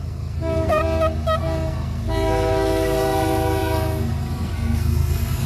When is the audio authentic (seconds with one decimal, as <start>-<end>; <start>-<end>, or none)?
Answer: 0.8-1.4